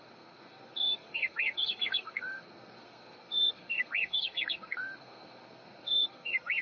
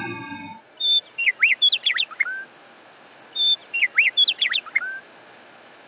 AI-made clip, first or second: first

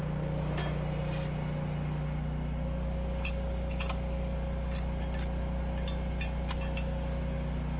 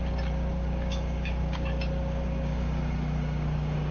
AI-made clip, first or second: second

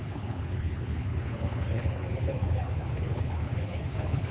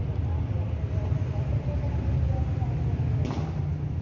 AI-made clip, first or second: first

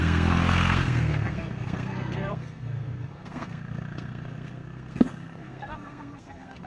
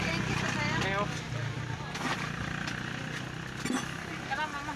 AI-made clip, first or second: first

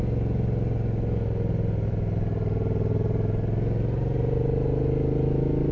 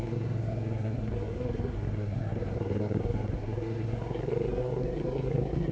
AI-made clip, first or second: second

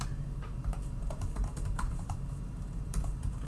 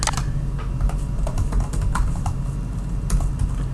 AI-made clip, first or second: first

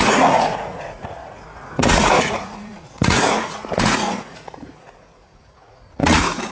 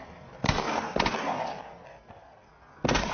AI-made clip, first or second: first